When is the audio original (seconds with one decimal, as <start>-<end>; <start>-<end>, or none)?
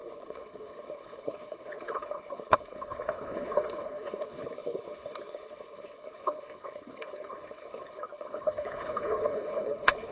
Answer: none